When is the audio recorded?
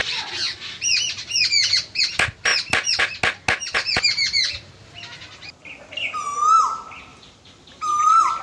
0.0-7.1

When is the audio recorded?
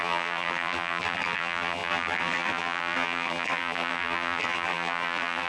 none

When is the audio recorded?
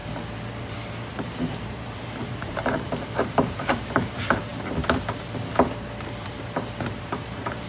0.0-1.1; 4.5-7.0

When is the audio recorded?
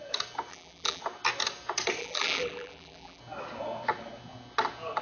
0.0-0.5; 1.0-2.0; 3.2-5.0